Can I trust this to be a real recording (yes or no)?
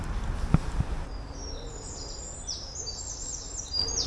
yes